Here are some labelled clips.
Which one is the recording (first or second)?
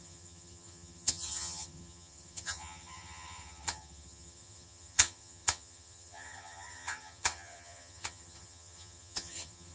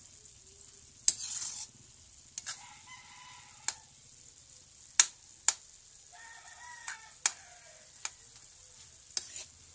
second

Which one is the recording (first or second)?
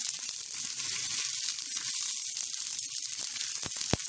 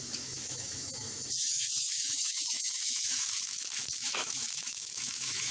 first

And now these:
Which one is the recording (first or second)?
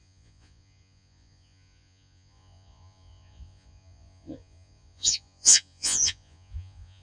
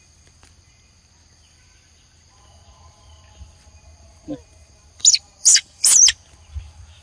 second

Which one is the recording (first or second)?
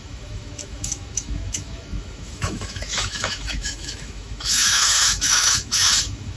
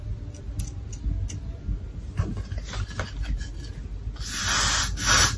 second